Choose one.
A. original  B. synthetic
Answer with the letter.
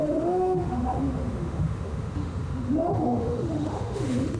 B